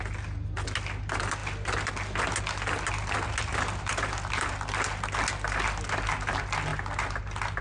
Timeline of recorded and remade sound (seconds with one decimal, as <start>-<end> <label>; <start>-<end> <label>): 0.0-7.6 recorded

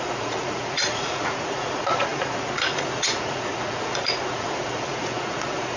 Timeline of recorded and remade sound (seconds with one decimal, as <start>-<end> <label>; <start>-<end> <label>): 0.0-5.8 remade

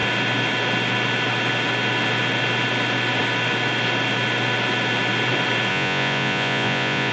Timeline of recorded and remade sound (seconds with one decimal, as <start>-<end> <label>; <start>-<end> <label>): 0.0-5.7 recorded; 5.7-7.1 remade

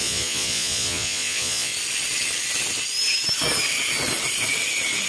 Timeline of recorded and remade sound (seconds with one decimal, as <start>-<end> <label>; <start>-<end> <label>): 0.0-1.7 remade; 1.7-5.1 recorded

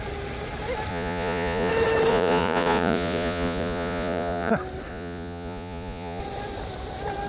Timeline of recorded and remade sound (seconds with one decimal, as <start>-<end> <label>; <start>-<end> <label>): 0.0-0.9 recorded; 0.9-1.7 remade; 1.7-2.1 recorded; 2.1-4.5 remade; 4.5-4.9 recorded; 4.9-6.2 remade; 6.2-7.3 recorded

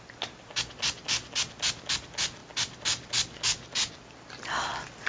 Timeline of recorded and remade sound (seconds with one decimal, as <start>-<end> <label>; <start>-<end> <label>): 0.0-5.1 recorded

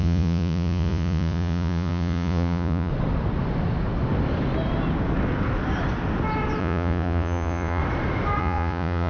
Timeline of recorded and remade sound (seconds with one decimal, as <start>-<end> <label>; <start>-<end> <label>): 0.0-2.9 remade; 2.9-6.6 recorded; 6.6-7.8 remade; 7.8-8.4 recorded; 8.4-9.1 remade